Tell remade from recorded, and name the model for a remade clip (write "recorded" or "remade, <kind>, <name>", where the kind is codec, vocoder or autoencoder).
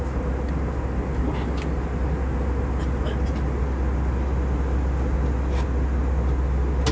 recorded